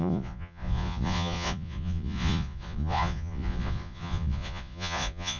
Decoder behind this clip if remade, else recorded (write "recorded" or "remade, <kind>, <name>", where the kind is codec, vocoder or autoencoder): remade, vocoder, Vocos